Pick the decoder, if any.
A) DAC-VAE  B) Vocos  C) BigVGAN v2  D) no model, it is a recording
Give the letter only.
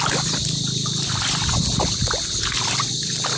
D